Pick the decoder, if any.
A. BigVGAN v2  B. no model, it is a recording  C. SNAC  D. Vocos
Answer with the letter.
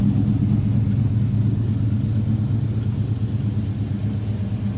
B